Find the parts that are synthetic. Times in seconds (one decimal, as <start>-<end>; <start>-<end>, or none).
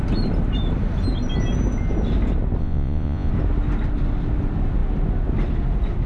2.6-3.3